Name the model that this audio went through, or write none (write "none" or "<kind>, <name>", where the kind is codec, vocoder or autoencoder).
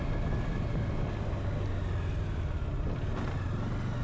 none